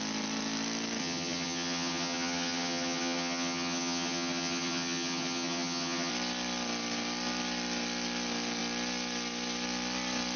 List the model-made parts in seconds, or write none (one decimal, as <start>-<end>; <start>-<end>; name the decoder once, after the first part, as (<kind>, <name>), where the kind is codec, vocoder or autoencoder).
1.0-6.1 (vocoder, HiFi-GAN)